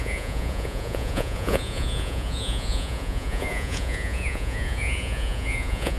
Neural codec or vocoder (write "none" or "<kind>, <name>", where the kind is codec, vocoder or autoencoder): vocoder, Vocos